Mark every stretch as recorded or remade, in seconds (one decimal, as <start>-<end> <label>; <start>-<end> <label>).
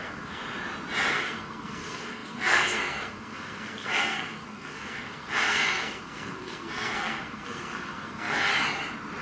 0.0-0.4 remade; 0.4-1.1 recorded; 1.1-8.5 remade; 8.5-9.2 recorded